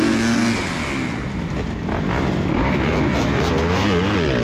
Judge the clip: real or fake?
real